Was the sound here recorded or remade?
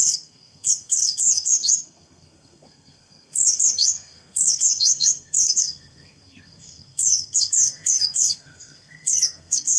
remade